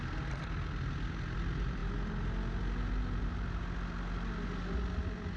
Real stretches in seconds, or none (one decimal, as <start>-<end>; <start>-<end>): 0.0-5.4